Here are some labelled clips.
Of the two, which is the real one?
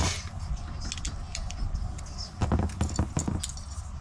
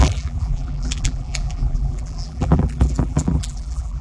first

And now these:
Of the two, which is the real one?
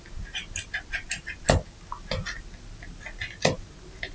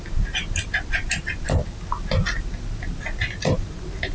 first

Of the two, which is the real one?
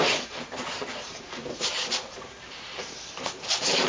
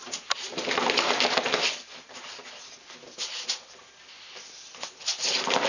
second